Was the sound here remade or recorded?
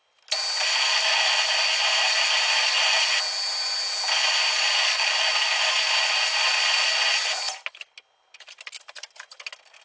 recorded